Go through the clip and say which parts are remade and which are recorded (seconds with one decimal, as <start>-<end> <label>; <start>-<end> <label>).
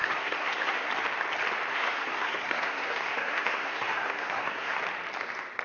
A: 0.0-0.9 remade; 0.9-1.7 recorded; 1.7-4.8 remade; 4.8-5.6 recorded